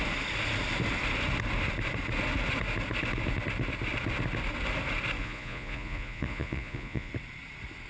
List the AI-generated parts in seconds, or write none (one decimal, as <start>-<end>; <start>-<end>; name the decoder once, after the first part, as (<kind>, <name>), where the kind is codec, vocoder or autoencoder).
5.2-7.1 (vocoder, Vocos)